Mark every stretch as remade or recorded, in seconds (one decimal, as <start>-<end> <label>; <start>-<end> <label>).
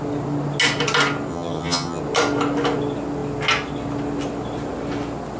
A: 0.0-1.3 recorded; 1.3-2.0 remade; 2.0-5.4 recorded